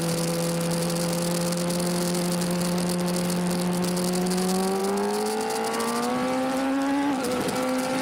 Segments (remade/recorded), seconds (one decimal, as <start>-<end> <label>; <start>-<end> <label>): 0.0-8.0 recorded

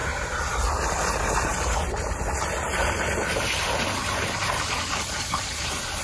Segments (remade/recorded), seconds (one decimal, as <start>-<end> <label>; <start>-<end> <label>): 0.0-0.5 remade; 0.5-4.0 recorded; 4.0-6.0 remade

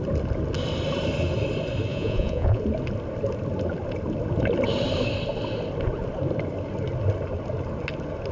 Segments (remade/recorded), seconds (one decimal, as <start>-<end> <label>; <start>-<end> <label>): 0.0-1.9 recorded; 1.9-2.6 remade; 2.6-8.3 recorded

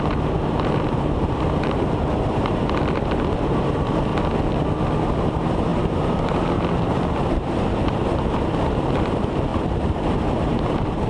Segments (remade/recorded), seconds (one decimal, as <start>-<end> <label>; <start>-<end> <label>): 0.0-4.1 remade; 4.1-5.2 recorded; 5.2-11.1 remade